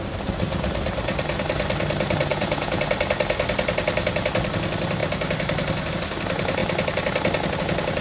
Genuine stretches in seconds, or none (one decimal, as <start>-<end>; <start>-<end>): 0.0-2.3; 2.8-8.0